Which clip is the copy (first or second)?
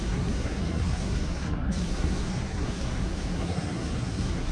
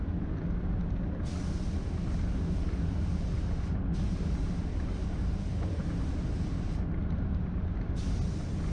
first